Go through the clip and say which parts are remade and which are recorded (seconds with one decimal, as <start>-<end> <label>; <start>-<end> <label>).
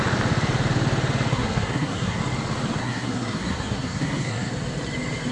0.0-1.3 recorded; 1.3-2.2 remade; 2.2-2.8 recorded; 2.8-4.5 remade; 4.5-5.3 recorded